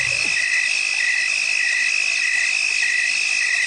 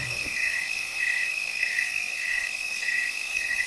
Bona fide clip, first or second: first